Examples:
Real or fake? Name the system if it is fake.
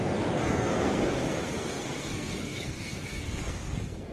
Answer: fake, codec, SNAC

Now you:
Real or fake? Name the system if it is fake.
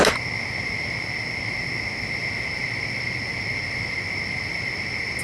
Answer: real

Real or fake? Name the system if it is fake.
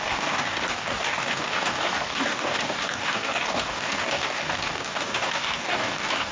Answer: fake, codec, DAC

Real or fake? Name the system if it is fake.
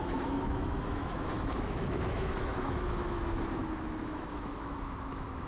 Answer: fake, autoencoder, DAC-VAE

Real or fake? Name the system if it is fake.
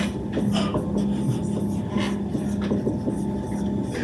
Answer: real